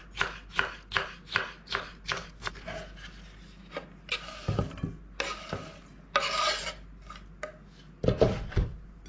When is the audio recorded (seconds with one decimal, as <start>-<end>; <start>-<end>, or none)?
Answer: 0.0-9.1